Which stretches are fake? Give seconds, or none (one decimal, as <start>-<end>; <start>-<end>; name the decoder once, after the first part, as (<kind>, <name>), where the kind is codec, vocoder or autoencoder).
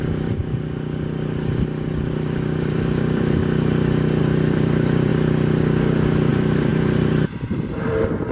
0.0-0.4 (vocoder, BigVGAN v2); 2.1-3.4; 4.2-5.1; 6.3-8.3